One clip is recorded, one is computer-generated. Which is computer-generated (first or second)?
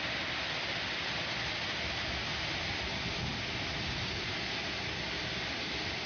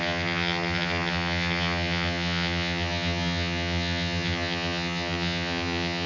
second